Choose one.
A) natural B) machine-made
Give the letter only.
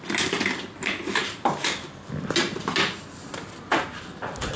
A